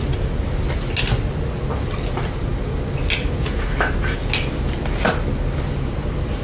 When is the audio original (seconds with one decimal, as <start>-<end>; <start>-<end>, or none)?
0.0-6.4